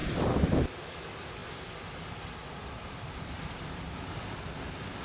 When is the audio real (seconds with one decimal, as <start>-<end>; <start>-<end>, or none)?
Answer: 0.5-1.4; 4.2-5.0